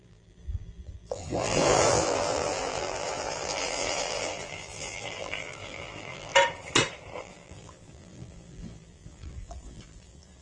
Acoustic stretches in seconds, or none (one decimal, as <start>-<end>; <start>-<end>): 6.3-7.2